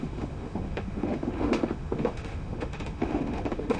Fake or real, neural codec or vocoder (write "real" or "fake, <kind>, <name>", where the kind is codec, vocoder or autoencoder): fake, autoencoder, DAC-VAE